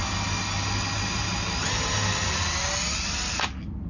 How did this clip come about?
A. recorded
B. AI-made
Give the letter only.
A